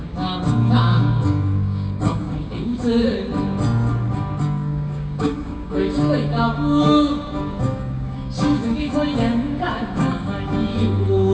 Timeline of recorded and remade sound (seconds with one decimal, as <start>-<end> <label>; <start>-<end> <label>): 0.0-3.3 remade; 3.3-4.4 recorded; 4.4-11.3 remade